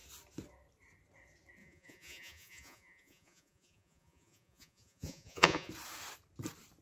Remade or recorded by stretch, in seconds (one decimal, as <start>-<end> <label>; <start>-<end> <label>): 0.0-1.6 recorded; 1.6-5.7 remade; 5.7-6.8 recorded